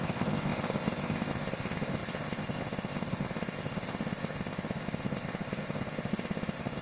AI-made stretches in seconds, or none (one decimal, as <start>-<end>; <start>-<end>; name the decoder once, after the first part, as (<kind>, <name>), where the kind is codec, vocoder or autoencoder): 0.0-6.8 (codec, ZipCodec)